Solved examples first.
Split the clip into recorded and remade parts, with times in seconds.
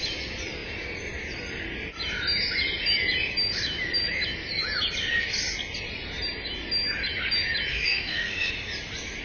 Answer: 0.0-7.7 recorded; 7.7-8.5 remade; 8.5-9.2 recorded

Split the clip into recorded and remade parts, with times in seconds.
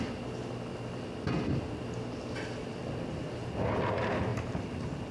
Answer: 0.0-2.8 recorded; 2.8-3.6 remade; 3.6-4.3 recorded; 4.3-5.1 remade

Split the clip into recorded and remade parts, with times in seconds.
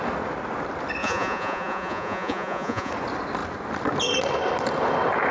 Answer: 0.0-1.0 recorded; 1.0-2.9 remade; 2.9-5.3 recorded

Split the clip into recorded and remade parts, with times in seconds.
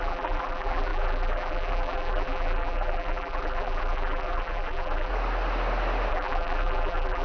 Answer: 0.0-5.1 remade; 5.1-6.1 recorded; 6.1-7.2 remade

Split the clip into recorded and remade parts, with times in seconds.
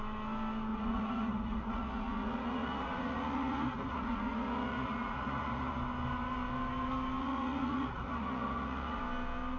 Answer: 0.0-0.7 recorded; 0.7-5.8 remade; 5.8-7.2 recorded; 7.2-9.0 remade; 9.0-9.6 recorded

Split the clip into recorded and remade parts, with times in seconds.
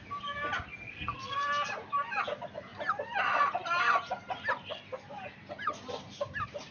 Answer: 0.0-0.8 recorded; 0.8-1.5 remade; 1.5-6.7 recorded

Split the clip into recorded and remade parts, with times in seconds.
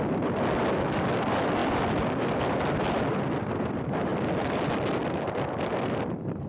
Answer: 0.0-1.6 recorded; 1.6-3.3 remade; 3.3-4.1 recorded; 4.1-5.3 remade; 5.3-6.5 recorded